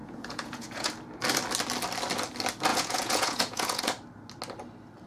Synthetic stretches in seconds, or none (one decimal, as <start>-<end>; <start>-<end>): 0.0-0.9; 2.7-3.8